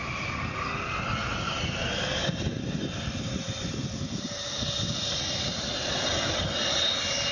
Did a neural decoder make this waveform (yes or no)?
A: no